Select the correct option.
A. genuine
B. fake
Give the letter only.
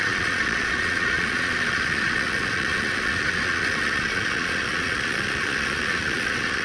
B